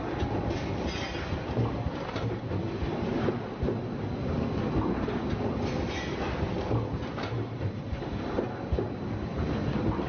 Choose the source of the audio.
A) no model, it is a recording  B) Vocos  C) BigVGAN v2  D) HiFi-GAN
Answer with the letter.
A